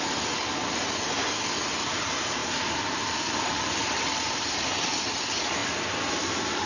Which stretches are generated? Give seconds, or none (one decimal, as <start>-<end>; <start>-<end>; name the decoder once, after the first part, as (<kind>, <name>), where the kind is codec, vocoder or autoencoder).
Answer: 2.4-4.7 (vocoder, BigVGAN v2)